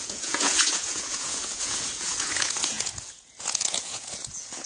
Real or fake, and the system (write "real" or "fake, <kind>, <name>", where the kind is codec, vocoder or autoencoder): fake, vocoder, Vocos